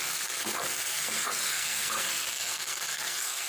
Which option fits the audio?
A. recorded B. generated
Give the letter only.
B